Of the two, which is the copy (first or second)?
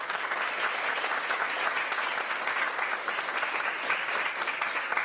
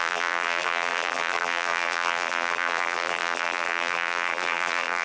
second